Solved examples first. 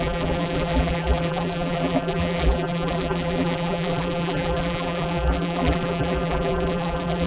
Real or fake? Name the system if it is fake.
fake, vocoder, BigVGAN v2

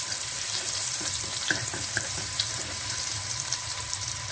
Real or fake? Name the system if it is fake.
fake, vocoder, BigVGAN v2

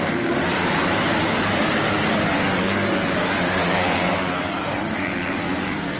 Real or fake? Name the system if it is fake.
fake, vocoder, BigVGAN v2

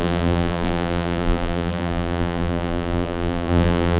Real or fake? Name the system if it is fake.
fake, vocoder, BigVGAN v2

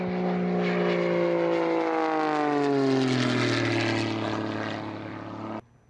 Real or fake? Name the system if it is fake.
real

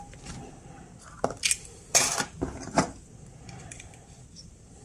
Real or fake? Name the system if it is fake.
real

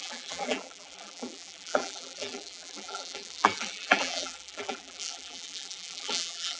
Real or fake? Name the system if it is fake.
fake, vocoder, BigVGAN v2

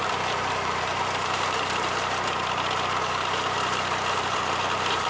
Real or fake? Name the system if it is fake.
fake, vocoder, BigVGAN v2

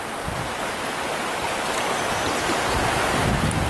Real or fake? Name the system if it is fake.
real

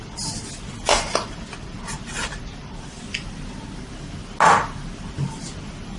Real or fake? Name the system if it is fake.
real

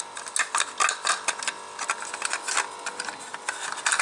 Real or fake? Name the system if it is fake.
real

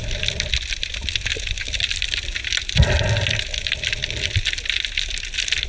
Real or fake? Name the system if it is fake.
real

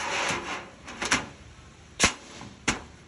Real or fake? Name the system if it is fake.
fake, vocoder, BigVGAN v2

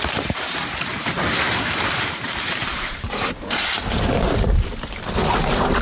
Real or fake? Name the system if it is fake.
fake, vocoder, BigVGAN v2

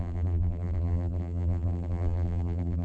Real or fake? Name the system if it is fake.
fake, vocoder, BigVGAN v2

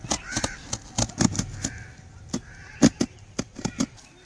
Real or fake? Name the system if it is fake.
real